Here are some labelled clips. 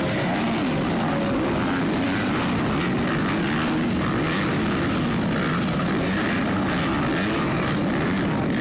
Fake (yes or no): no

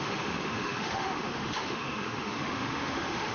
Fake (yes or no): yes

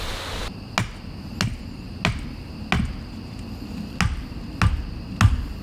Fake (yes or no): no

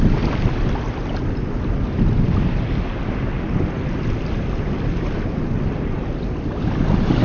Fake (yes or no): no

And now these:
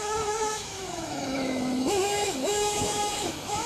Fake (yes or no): yes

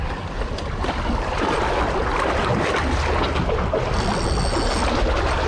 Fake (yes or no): no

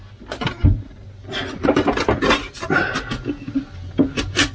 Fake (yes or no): no